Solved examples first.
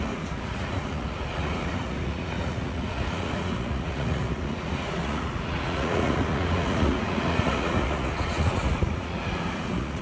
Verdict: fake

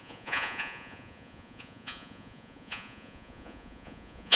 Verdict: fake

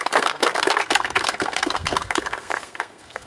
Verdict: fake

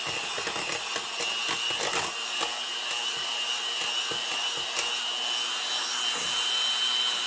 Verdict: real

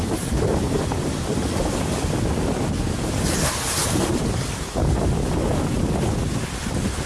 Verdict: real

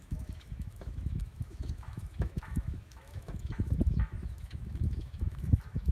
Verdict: fake